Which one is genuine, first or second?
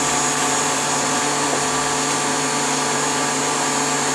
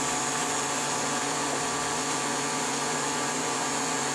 first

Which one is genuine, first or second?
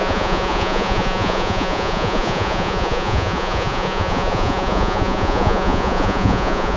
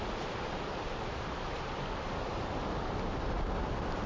second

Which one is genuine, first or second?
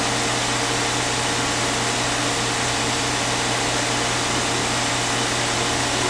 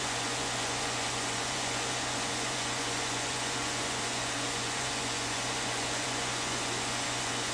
first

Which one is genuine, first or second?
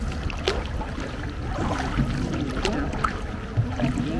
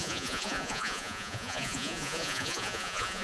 first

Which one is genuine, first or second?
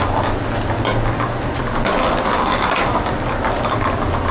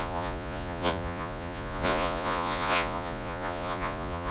first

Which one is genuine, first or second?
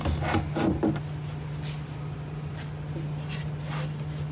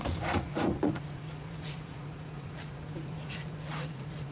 first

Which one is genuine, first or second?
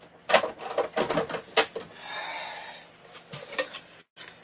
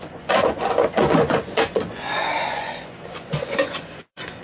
first